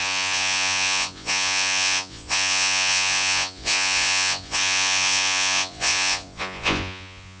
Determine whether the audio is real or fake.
fake